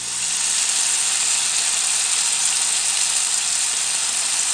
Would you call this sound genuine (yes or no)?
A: yes